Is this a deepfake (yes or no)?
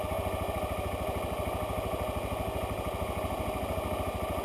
no